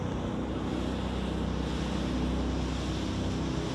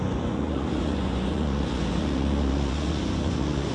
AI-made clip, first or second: second